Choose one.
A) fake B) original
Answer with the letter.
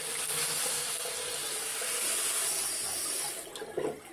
B